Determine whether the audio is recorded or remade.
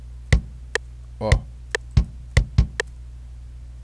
recorded